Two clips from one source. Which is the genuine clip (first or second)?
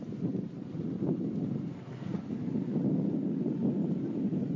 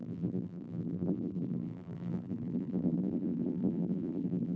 first